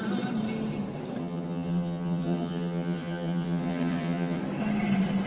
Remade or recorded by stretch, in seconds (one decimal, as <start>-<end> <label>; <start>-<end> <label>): 0.0-1.2 recorded; 1.2-4.4 remade; 4.4-5.3 recorded